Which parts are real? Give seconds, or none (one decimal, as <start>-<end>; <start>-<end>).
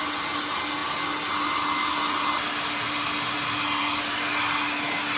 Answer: 0.0-5.2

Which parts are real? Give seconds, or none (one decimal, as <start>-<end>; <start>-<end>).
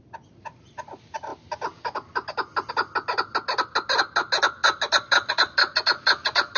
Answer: 0.0-6.6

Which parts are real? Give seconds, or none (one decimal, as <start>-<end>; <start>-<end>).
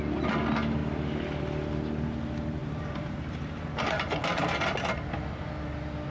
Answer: 0.0-2.6; 3.5-6.1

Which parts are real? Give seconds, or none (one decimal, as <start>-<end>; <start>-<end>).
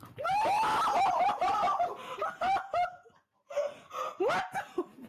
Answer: 0.0-5.1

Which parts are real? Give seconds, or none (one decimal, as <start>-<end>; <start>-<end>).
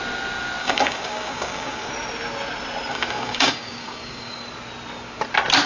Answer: 0.0-0.6; 1.9-2.9; 4.4-5.7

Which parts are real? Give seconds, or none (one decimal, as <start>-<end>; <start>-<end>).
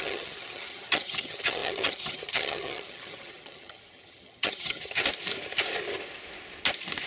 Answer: 5.0-7.1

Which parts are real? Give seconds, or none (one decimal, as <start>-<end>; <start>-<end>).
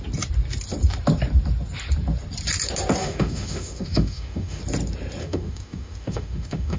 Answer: 0.0-3.0; 4.6-5.2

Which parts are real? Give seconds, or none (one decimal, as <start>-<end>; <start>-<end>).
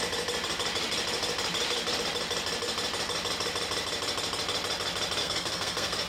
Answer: 0.0-5.2